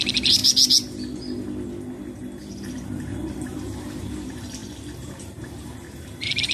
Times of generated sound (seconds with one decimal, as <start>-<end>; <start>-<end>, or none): 0.0-0.4; 2.5-6.5